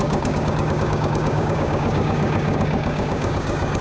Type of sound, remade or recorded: remade